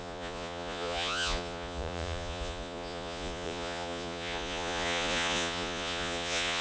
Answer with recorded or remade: remade